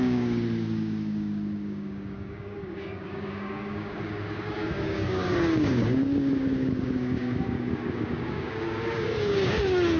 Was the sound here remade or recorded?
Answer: remade